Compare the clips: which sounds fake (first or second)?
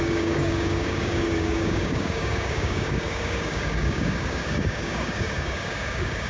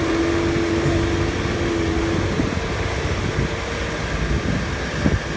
first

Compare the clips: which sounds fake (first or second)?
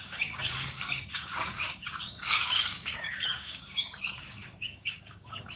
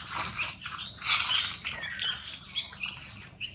first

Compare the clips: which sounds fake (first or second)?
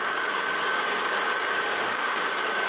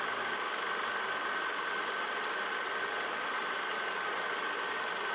first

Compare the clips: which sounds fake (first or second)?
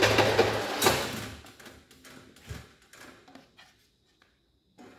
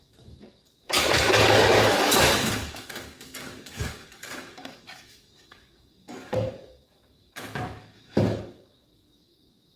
second